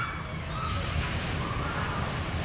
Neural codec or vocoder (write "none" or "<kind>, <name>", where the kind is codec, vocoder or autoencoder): none